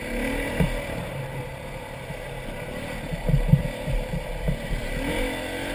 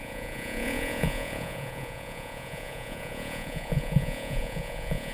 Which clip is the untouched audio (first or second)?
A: first